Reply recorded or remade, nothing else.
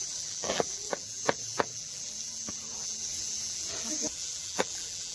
remade